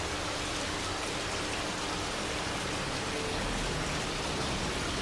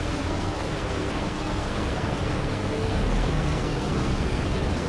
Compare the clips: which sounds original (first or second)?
first